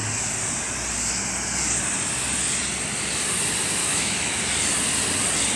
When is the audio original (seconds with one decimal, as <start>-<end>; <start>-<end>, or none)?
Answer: 0.0-3.8; 4.4-5.6